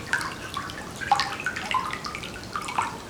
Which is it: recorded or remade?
recorded